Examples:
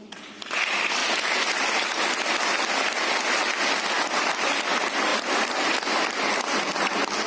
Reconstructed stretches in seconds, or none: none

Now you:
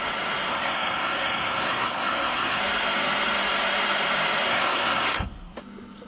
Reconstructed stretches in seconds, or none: 0.5-2.6; 4.5-5.6

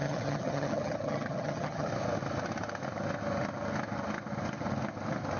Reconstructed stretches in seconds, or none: 0.0-1.9

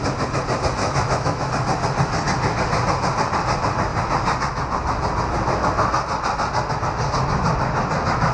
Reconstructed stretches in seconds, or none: 0.8-1.5

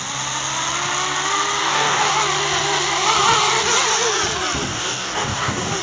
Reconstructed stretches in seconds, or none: 1.6-2.1; 4.7-5.8

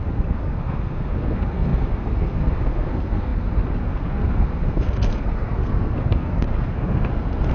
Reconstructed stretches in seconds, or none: 0.0-7.5

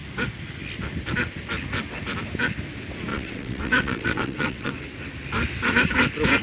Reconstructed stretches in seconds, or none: 3.1-4.7